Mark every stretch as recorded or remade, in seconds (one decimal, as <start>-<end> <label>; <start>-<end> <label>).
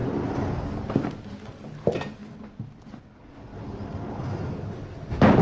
0.0-2.2 recorded; 2.2-2.8 remade; 2.8-3.5 recorded; 3.5-4.5 remade; 4.5-5.4 recorded